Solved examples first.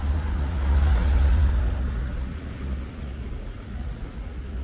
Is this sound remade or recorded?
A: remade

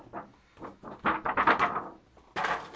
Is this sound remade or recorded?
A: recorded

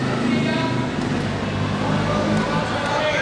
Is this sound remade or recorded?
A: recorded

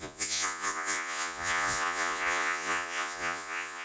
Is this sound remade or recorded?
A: remade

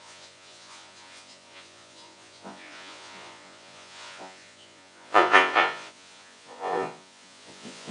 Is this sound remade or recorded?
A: remade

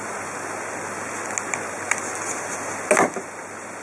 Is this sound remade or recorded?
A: recorded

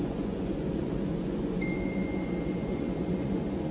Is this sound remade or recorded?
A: remade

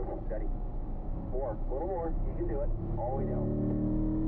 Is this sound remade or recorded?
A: recorded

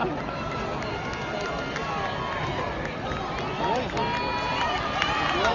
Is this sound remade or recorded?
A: recorded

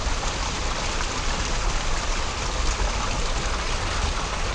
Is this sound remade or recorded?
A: recorded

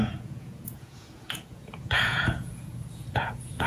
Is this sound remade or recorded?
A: remade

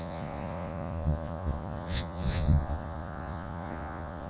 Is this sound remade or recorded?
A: remade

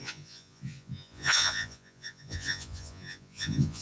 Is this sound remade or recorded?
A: remade